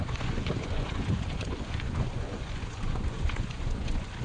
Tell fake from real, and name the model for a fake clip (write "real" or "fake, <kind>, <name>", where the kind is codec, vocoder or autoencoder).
fake, vocoder, Vocos